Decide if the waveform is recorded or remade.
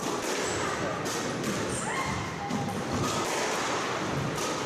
recorded